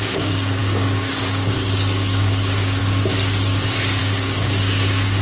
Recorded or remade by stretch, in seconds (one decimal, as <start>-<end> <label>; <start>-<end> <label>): 0.0-2.8 remade; 2.8-4.0 recorded; 4.0-5.2 remade